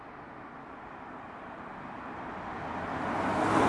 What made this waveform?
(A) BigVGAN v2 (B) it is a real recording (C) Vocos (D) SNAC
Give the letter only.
B